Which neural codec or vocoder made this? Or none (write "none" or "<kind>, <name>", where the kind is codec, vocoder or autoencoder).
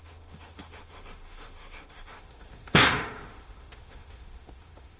autoencoder, DAC-VAE